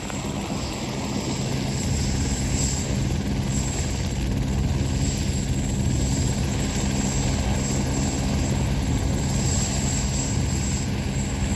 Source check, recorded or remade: recorded